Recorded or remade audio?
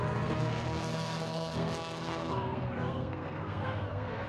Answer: remade